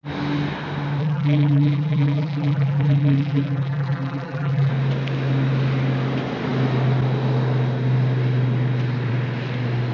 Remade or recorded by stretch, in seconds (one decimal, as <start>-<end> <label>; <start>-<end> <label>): 0.0-1.0 recorded; 1.0-4.7 remade; 4.7-9.9 recorded